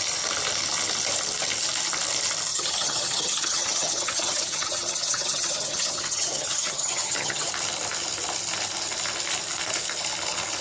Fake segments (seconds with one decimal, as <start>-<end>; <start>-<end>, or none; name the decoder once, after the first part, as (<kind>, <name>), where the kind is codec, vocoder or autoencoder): 2.5-7.5 (vocoder, HiFi-GAN)